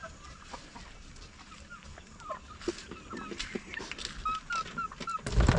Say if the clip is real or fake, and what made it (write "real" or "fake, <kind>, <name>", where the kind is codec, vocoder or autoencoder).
real